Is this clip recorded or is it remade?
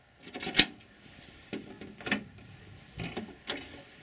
recorded